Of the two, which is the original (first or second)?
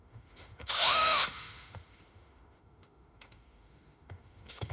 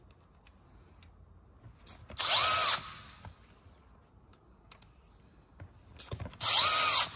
second